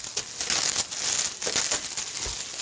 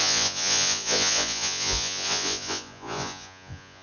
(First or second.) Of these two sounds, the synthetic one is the second